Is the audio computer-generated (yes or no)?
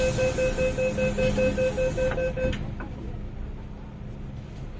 no